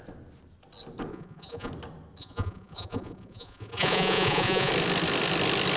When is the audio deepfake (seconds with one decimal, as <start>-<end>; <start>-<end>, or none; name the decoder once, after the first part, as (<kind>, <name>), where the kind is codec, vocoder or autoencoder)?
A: 1.1-1.7 (vocoder, Vocos); 2.2-4.7